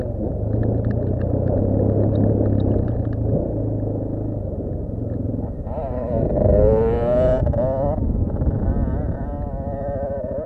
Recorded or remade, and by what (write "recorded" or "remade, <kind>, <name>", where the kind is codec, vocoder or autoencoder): recorded